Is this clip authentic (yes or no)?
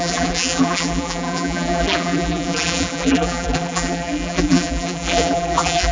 no